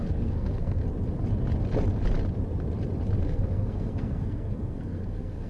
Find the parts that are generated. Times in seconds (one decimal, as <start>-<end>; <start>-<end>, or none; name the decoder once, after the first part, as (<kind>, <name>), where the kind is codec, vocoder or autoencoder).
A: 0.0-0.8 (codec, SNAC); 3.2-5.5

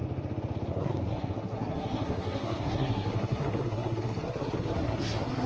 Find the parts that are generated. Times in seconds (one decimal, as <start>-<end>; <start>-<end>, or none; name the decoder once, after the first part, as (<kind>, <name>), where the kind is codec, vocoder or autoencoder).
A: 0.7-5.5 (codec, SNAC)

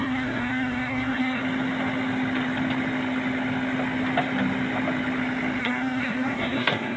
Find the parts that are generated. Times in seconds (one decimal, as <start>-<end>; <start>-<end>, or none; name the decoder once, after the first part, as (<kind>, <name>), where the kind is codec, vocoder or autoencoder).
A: 0.0-1.4 (codec, SNAC); 5.6-7.0

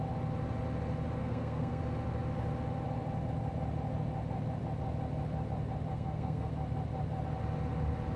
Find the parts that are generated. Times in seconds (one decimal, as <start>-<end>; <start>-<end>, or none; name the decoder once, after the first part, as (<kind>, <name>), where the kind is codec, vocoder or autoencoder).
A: 1.2-1.8 (codec, SNAC); 5.9-6.5

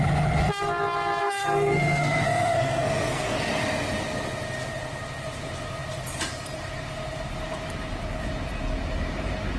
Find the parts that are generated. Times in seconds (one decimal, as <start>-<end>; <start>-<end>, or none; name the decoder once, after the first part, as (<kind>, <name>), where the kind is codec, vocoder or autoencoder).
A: 1.2-3.5 (codec, SNAC)

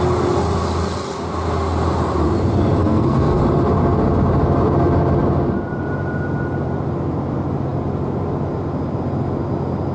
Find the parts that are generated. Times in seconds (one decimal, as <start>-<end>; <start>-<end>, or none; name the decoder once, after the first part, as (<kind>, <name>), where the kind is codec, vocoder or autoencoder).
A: 2.8-3.4 (codec, SNAC)